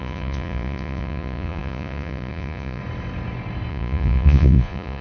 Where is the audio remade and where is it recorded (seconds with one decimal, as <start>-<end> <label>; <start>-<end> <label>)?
0.0-2.8 remade; 2.8-3.7 recorded; 3.7-5.0 remade